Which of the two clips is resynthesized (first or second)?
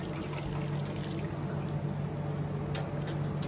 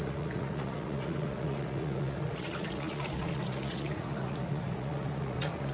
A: second